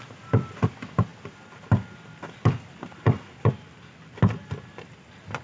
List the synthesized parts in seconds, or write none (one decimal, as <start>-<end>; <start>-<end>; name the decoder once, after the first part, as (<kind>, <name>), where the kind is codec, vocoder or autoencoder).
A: none